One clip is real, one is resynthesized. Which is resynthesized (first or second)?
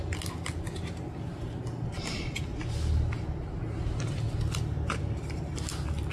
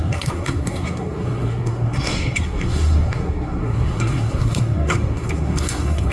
second